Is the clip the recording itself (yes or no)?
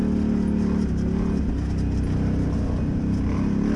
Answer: yes